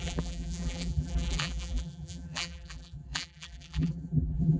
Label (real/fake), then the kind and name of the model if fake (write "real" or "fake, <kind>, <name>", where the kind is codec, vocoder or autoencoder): fake, vocoder, BigVGAN v2